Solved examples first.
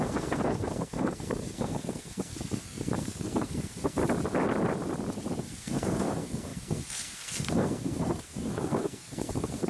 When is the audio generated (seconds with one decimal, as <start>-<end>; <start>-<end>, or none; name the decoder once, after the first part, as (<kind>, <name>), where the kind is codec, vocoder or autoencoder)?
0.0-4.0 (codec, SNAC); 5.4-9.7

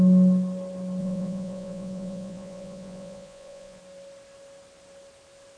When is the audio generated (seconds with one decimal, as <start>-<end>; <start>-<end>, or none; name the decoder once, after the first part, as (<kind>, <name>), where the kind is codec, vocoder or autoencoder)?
1.0-3.8 (vocoder, Vocos)

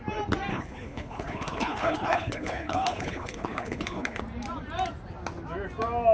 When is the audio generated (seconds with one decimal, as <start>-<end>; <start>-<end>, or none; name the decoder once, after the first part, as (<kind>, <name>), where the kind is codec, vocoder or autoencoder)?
0.5-4.2 (codec, HILCodec)

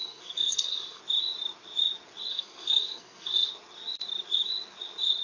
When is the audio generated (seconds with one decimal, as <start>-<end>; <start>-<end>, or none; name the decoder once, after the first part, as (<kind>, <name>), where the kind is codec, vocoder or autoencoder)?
0.0-1.0 (codec, SNAC); 2.3-3.5

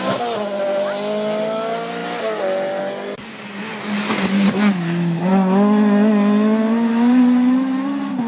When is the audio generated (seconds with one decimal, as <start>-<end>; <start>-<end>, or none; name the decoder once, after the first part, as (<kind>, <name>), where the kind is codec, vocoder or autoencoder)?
none

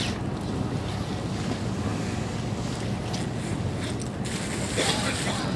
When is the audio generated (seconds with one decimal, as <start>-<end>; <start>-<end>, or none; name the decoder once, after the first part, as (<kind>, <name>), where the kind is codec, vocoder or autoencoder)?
none

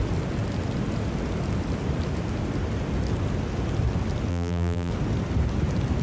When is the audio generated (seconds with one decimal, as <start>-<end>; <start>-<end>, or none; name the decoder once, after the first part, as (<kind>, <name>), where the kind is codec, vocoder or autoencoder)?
4.3-4.9 (vocoder, BigVGAN v2)

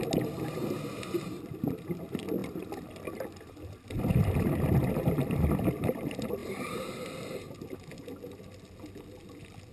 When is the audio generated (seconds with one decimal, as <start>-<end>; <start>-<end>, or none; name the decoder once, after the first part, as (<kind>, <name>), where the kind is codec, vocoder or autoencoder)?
none